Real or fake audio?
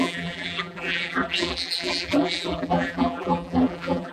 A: fake